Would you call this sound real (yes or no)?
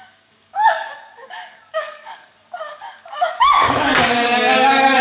no